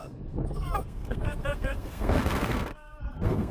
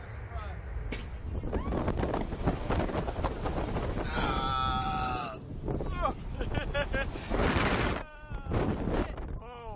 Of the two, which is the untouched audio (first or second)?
second